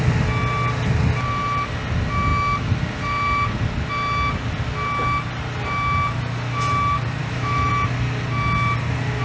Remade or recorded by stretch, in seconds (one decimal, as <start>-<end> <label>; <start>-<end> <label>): 0.0-7.2 recorded; 7.2-7.7 remade; 7.7-9.2 recorded